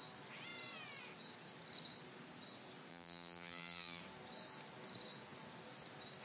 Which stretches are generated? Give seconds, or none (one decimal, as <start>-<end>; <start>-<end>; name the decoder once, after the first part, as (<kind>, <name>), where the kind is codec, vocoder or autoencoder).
2.9-4.0 (vocoder, BigVGAN v2)